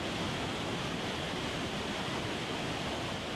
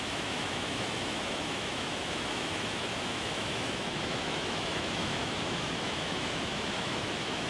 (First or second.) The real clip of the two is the first